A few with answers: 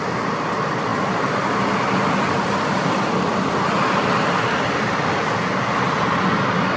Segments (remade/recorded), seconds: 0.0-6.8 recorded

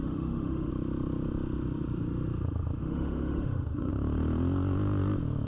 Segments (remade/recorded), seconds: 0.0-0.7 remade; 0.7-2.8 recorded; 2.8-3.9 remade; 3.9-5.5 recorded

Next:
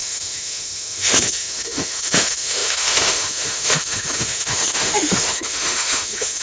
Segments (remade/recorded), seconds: 0.0-6.4 remade

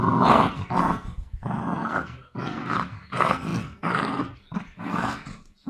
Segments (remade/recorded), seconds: 0.0-5.7 remade